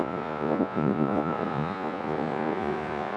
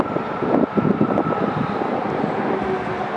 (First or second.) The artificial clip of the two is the first